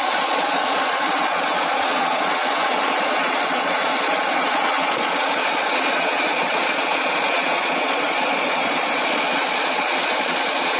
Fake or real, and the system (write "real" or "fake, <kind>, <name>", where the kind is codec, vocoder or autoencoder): fake, vocoder, Vocos